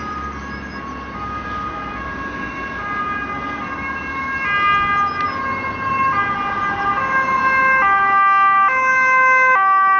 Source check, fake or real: real